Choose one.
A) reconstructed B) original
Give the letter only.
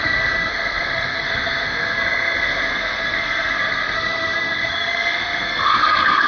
A